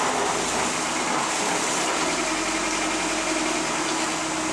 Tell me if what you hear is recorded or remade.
recorded